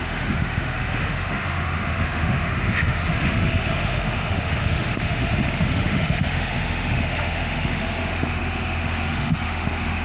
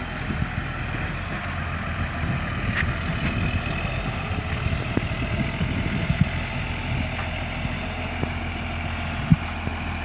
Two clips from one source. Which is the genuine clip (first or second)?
second